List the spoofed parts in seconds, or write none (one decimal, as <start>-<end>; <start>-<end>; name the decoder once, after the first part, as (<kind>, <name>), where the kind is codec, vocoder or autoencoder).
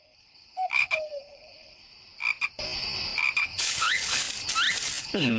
0.0-1.8 (codec, HILCodec); 3.4-4.2; 5.0-5.4